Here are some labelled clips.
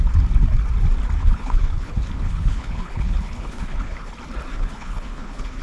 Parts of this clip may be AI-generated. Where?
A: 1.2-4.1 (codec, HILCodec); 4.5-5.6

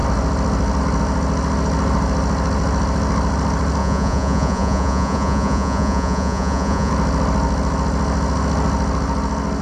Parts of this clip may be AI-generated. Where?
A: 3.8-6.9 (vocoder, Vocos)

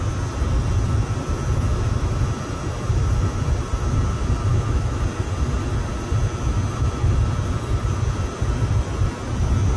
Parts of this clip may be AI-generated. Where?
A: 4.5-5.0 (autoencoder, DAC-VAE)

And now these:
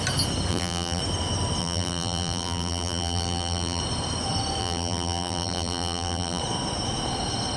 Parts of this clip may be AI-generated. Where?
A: 0.5-1.0 (vocoder, BigVGAN v2); 1.6-3.8; 4.6-6.4

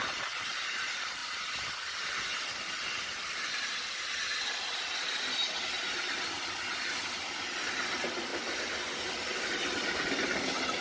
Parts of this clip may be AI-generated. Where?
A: none